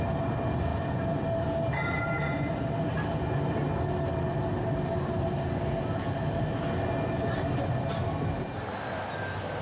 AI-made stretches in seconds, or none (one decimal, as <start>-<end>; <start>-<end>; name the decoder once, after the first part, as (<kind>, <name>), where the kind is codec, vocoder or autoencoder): none